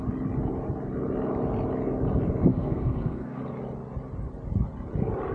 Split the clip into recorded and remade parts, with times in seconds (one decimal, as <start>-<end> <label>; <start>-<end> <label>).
0.0-2.5 recorded; 2.5-3.4 remade; 3.4-5.3 recorded